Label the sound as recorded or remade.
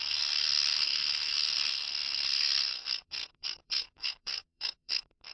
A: remade